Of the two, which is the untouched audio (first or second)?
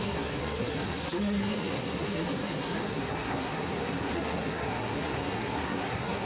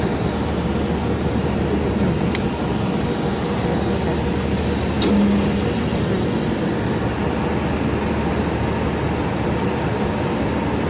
second